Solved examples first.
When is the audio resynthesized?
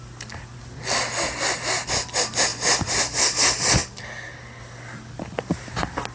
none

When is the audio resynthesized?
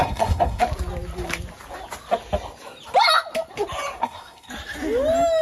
0.0-0.6 (codec, SNAC); 4.0-4.5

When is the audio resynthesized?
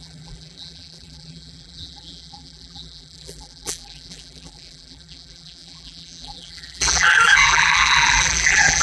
0.0-8.8 (vocoder, BigVGAN v2)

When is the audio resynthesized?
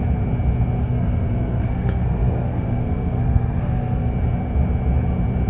0.8-4.1 (codec, SNAC)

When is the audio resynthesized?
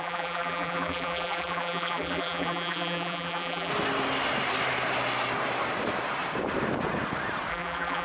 0.0-3.7 (vocoder, BigVGAN v2); 7.5-8.0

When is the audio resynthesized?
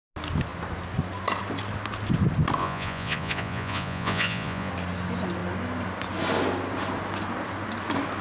2.6-4.7 (vocoder, Vocos)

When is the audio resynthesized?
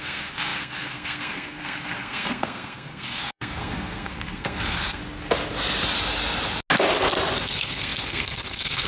0.0-5.0 (codec, SNAC); 7.4-8.9